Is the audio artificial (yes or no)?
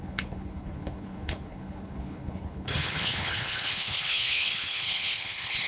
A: yes